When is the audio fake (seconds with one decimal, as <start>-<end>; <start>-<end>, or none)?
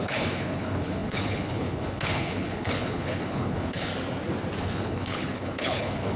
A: 0.0-3.9; 4.6-6.2